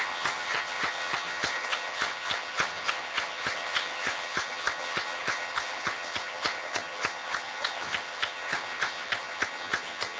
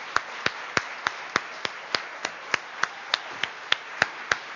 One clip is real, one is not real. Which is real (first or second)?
second